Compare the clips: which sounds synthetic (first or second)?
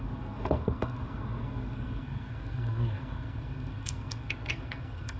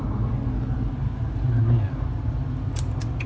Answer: first